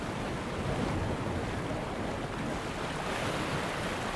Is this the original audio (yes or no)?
yes